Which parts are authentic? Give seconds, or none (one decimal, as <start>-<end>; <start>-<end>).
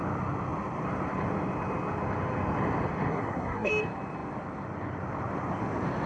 0.0-3.1; 3.7-6.1